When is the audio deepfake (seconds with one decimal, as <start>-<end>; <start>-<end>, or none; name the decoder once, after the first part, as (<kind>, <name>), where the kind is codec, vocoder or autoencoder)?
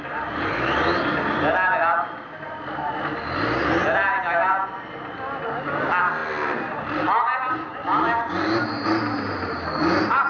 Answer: none